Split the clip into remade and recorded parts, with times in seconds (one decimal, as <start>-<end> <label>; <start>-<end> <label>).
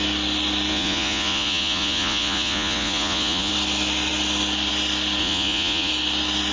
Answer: 0.0-0.7 recorded; 0.7-3.5 remade; 3.5-5.2 recorded; 5.2-5.9 remade; 5.9-6.5 recorded